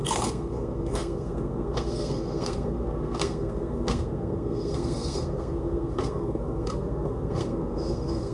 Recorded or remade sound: remade